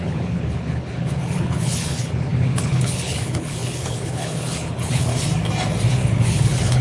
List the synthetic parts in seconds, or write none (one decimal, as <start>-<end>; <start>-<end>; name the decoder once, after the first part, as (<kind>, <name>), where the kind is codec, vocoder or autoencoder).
0.0-5.1 (codec, HILCodec); 5.9-6.8